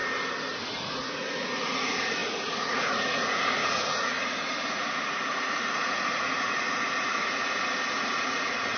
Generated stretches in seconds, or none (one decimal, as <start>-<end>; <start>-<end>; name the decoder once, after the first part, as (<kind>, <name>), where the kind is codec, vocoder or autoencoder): 0.6-7.4 (vocoder, Vocos); 7.9-8.8